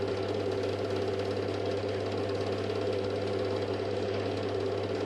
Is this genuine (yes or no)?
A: yes